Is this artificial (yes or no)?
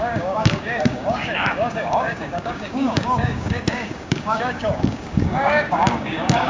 yes